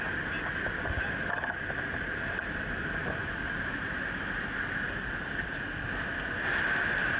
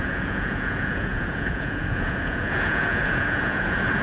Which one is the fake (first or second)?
second